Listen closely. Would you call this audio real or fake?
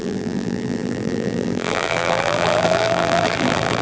fake